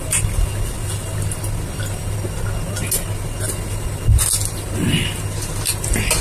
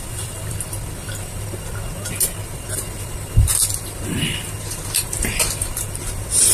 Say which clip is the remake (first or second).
second